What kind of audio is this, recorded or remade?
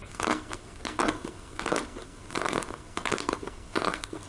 remade